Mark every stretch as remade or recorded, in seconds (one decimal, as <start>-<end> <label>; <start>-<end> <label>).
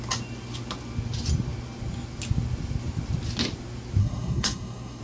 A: 0.0-4.0 recorded; 4.0-5.0 remade